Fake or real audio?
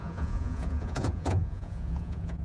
fake